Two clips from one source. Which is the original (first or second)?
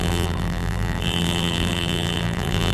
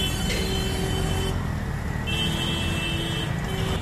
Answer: second